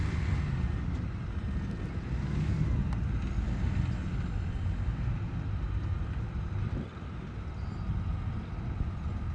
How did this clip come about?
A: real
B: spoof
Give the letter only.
A